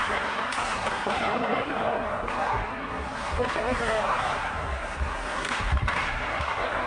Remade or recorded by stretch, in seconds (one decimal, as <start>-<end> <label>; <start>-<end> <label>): 0.0-6.9 remade